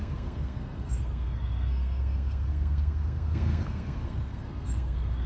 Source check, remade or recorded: remade